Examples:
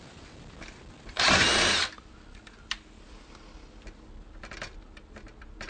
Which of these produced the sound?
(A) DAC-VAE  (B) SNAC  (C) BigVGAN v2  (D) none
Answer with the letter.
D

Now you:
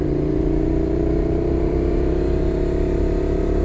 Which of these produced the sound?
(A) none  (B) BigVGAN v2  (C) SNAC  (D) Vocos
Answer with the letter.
B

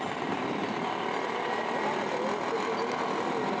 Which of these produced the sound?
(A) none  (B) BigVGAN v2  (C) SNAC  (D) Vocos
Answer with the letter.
A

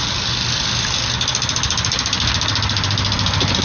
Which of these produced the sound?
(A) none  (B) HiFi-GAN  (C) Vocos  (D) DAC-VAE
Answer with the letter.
A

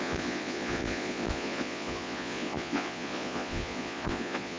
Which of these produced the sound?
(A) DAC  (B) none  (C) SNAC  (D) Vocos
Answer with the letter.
D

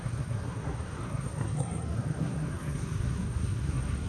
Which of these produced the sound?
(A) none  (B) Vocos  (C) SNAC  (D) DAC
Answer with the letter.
C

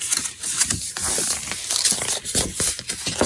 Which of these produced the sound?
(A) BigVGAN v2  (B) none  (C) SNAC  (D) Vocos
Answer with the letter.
B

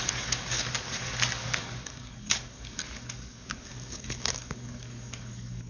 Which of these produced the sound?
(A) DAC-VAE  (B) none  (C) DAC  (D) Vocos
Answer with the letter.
C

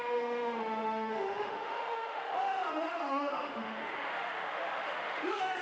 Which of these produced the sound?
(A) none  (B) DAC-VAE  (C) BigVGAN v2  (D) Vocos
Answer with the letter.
B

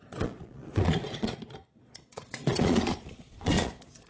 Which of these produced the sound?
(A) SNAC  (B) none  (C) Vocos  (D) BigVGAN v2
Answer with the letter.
C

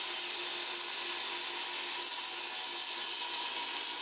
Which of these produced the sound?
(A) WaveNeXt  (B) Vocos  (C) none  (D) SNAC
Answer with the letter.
C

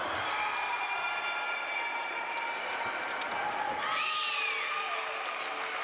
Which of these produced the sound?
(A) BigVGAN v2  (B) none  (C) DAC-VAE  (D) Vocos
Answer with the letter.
B